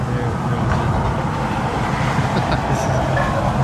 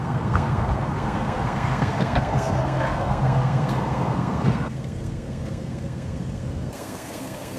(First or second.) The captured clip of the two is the first